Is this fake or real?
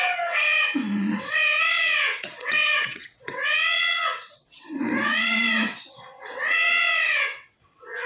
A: fake